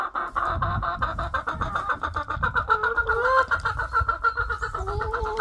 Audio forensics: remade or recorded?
recorded